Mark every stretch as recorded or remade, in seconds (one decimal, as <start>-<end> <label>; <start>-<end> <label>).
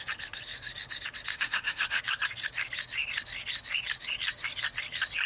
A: 0.0-1.3 recorded; 1.3-2.0 remade; 2.0-5.3 recorded